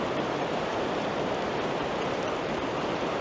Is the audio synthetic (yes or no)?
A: yes